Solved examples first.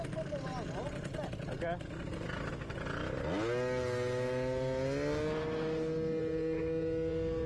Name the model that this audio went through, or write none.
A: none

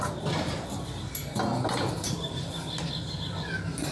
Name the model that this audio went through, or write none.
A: none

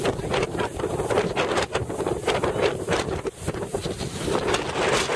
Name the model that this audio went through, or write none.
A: none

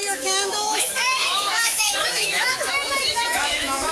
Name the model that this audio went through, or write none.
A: autoencoder, DAC-VAE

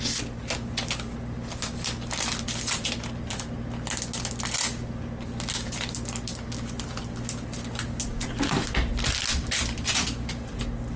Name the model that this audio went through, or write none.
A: none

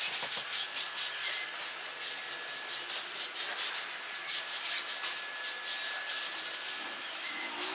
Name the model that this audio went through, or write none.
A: none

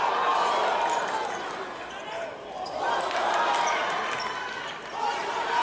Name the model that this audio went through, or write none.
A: none